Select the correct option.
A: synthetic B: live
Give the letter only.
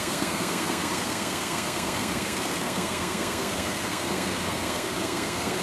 A